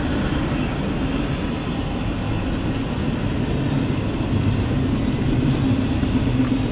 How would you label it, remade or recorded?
recorded